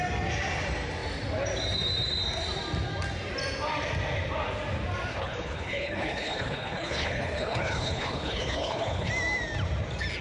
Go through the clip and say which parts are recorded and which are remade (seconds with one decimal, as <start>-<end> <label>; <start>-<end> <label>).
0.0-5.1 recorded; 5.1-9.1 remade; 9.1-10.2 recorded